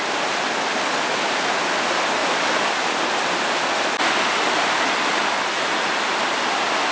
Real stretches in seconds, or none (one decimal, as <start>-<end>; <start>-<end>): 0.0-2.2; 4.8-6.9